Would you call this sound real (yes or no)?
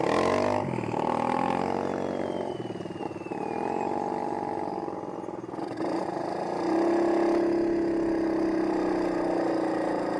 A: yes